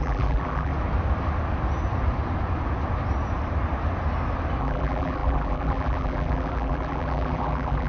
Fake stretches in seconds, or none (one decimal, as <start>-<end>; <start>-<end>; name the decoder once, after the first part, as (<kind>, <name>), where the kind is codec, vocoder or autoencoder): 0.0-0.7 (vocoder, BigVGAN v2); 4.6-7.9

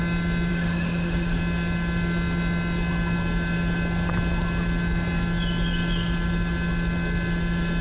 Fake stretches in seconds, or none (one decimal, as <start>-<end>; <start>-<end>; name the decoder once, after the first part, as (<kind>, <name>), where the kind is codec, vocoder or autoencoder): 0.5-1.4 (autoencoder, DAC-VAE)

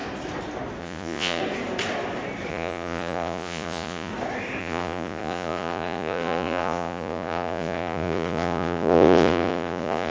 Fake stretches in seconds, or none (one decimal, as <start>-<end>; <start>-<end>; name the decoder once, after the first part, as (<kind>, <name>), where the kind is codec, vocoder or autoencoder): 0.8-1.4 (vocoder, Vocos); 2.5-4.1; 4.6-10.1

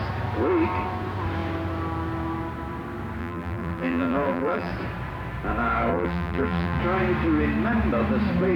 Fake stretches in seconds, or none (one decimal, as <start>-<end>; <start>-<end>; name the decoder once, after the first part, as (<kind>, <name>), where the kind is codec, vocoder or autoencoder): 3.2-4.7 (vocoder, BigVGAN v2); 5.9-6.8

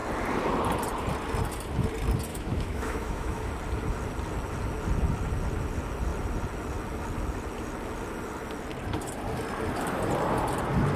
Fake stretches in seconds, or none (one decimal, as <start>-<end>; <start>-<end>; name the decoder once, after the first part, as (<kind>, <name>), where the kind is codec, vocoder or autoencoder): 2.3-3.5 (autoencoder, DAC-VAE)

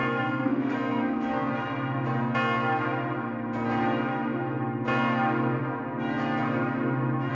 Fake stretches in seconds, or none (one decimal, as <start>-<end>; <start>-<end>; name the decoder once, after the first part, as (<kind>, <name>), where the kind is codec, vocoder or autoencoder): 0.0-1.5 (codec, SNAC)

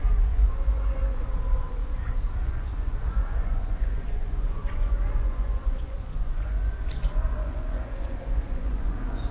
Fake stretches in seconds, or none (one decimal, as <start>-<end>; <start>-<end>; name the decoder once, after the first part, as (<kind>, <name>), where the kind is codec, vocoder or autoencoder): 0.0-9.3 (vocoder, Vocos)